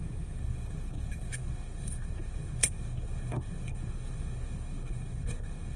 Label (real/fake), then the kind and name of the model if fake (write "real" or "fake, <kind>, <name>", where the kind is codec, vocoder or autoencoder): fake, codec, SNAC